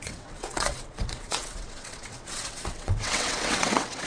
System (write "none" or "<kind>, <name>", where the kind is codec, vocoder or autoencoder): vocoder, WaveNeXt